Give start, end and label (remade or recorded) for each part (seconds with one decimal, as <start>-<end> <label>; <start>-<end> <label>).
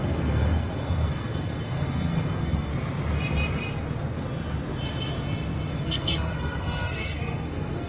0.0-2.7 remade; 2.7-5.7 recorded; 5.7-7.9 remade